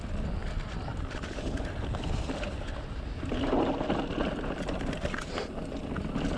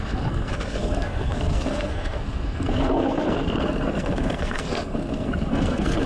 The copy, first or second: second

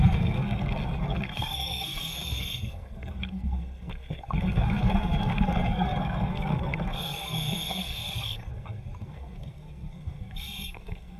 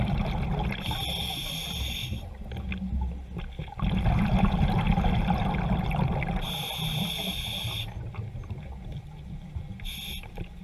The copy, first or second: first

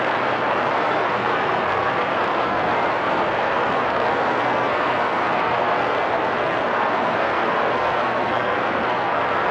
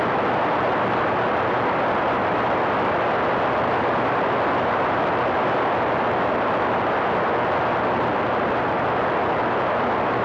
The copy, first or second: first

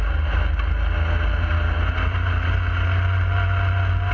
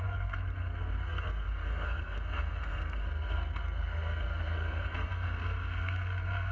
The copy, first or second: second